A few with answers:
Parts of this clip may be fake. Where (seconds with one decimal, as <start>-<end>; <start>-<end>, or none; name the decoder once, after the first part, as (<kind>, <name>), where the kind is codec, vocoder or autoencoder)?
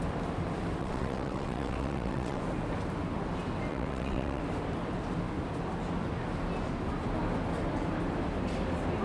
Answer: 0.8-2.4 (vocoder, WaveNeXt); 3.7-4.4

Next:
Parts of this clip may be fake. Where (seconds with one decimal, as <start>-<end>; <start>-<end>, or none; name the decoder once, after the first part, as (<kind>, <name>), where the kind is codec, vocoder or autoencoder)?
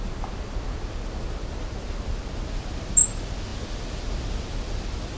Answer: none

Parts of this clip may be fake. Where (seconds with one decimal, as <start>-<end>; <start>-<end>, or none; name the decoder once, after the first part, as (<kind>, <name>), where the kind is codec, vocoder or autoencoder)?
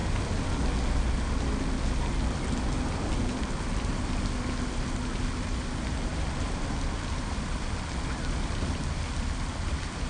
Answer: none